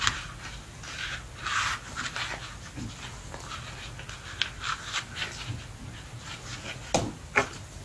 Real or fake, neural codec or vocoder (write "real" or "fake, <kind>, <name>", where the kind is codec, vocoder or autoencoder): real